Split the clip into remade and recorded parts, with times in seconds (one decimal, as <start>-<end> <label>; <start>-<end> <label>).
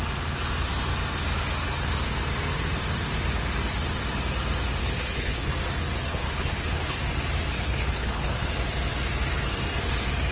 0.0-4.8 recorded; 4.8-5.5 remade; 5.5-6.1 recorded; 6.1-7.0 remade; 7.0-7.5 recorded; 7.5-8.5 remade; 8.5-10.3 recorded